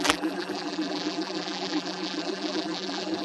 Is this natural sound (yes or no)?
no